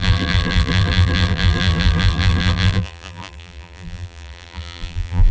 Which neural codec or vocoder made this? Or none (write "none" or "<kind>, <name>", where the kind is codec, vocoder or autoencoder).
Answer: vocoder, BigVGAN v2